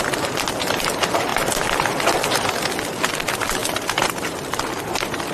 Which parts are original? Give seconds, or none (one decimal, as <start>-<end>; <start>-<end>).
0.0-1.3; 2.6-3.6; 4.8-5.3